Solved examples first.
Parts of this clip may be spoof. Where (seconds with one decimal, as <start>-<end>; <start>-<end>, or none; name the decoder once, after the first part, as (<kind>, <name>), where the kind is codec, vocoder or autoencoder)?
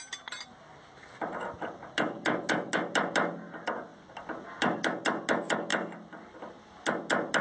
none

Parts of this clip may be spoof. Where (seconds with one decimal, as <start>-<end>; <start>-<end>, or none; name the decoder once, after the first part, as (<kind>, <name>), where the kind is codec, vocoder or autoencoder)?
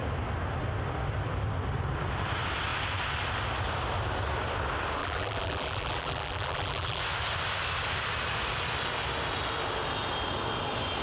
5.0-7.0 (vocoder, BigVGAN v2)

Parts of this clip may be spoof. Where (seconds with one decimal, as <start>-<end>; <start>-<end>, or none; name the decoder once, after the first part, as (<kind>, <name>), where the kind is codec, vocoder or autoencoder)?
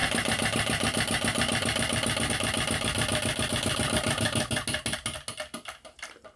none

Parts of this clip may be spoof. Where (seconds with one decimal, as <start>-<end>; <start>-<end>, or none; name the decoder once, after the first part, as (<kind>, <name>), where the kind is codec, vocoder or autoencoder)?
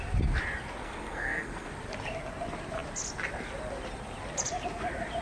0.8-1.7 (codec, SNAC)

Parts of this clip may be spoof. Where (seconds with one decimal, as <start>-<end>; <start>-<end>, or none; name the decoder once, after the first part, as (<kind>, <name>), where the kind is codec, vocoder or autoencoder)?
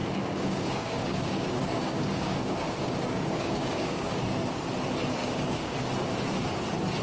0.0-4.2 (codec, DAC); 5.2-5.9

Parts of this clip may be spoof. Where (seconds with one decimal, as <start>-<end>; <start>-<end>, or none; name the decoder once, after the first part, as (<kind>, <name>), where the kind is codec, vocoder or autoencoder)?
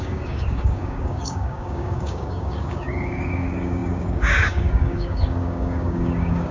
0.0-6.5 (codec, DAC)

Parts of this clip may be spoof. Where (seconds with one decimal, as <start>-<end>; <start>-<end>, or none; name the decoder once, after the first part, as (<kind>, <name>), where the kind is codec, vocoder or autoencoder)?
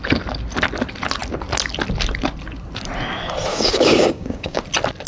3.5-4.6 (codec, DAC)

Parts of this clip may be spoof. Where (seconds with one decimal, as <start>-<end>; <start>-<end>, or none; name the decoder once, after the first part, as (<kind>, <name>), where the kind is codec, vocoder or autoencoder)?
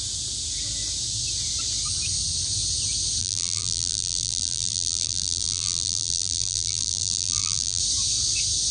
3.2-7.8 (vocoder, BigVGAN v2)